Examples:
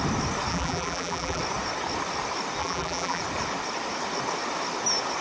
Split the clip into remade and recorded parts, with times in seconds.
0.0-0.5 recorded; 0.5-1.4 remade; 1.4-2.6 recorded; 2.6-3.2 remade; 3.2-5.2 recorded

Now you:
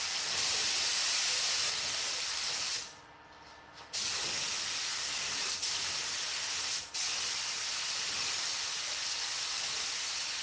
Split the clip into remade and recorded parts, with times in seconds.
0.0-0.6 recorded; 0.6-5.0 remade; 5.0-10.4 recorded

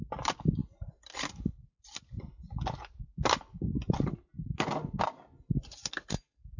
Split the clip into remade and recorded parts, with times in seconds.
0.0-6.6 recorded

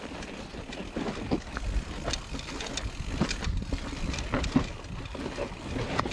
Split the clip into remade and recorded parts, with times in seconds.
0.0-6.1 recorded